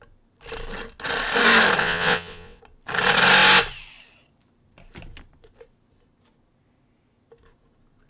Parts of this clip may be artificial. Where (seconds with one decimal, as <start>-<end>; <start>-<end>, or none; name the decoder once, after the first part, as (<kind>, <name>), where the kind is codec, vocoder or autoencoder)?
1.8-2.6 (vocoder, WaveNeXt)